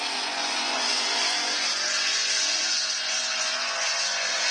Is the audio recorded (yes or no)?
no